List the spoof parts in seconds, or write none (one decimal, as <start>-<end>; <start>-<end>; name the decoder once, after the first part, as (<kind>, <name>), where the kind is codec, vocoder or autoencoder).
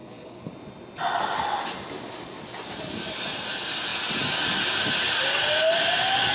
0.0-0.5 (codec, HILCodec)